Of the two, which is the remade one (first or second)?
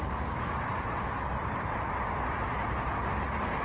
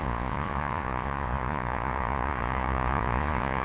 second